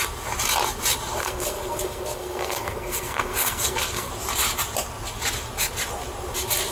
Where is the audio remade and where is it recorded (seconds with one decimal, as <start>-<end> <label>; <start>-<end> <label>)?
0.0-1.2 recorded; 1.2-4.1 remade; 4.1-6.7 recorded